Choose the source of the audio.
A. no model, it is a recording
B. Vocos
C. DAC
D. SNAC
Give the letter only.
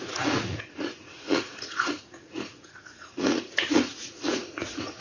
B